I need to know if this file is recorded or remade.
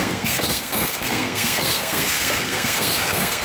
remade